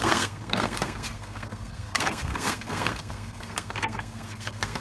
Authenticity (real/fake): fake